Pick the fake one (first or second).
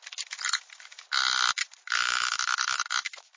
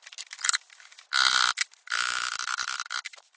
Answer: first